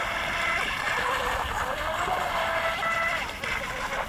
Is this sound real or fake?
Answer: real